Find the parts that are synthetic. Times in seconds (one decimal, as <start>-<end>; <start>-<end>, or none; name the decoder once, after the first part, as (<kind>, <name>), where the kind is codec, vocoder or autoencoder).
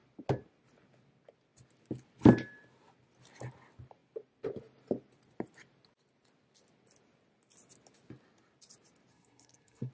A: 9.1-9.9 (codec, SNAC)